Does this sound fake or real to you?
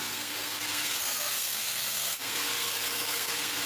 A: fake